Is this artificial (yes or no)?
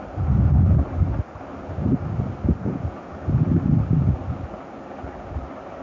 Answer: no